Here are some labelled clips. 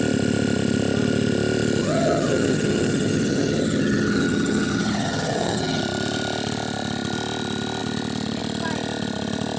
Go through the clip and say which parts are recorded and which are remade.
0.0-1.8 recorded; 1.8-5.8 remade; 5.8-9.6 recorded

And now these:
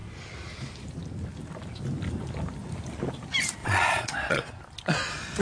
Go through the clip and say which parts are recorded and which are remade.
0.0-3.6 recorded; 3.6-4.5 remade; 4.5-5.4 recorded

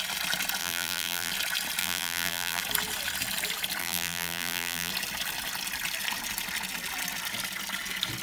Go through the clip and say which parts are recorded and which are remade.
0.0-0.6 recorded; 0.6-1.3 remade; 1.3-1.8 recorded; 1.8-2.6 remade; 2.6-3.8 recorded; 3.8-4.9 remade; 4.9-8.2 recorded